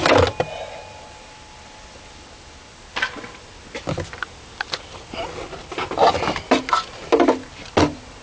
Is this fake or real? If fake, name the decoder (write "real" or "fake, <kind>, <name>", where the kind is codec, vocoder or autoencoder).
real